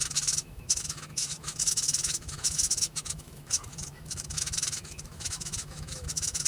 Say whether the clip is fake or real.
fake